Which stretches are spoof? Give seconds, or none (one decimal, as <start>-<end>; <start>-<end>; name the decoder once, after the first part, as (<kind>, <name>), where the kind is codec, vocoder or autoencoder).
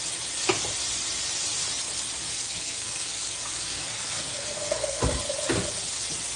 2.3-5.0 (codec, SNAC)